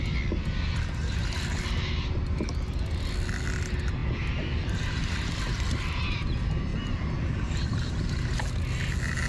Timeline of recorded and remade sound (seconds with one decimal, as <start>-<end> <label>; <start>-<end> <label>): 0.0-9.3 recorded